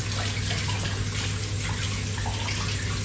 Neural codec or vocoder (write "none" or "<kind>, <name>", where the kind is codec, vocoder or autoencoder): none